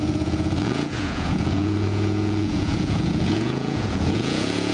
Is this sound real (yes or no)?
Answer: no